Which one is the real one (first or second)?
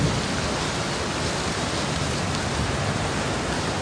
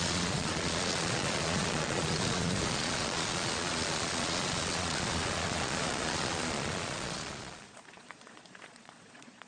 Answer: first